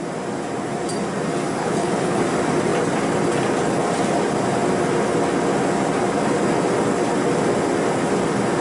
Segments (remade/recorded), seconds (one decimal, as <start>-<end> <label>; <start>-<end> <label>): 0.0-1.6 recorded; 1.6-2.2 remade; 2.2-8.6 recorded